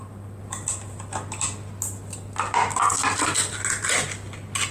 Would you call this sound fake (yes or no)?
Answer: no